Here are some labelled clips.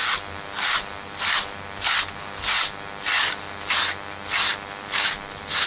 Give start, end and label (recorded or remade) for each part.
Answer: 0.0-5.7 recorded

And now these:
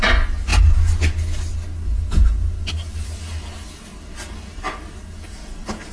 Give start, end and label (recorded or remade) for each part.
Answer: 0.0-5.9 recorded

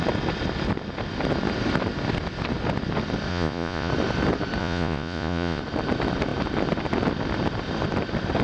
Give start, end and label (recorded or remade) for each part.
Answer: 0.0-3.3 recorded; 3.3-3.9 remade; 3.9-4.6 recorded; 4.6-5.6 remade; 5.6-8.4 recorded

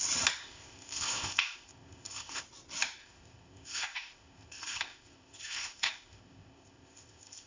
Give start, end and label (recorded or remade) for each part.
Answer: 0.0-0.4 recorded; 0.4-2.4 remade; 2.4-3.0 recorded; 3.0-7.5 remade